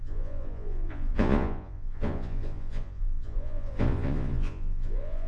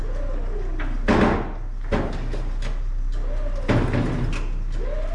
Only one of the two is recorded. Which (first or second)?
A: second